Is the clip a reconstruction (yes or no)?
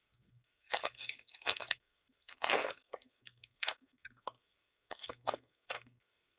yes